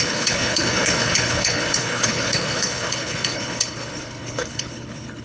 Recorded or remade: remade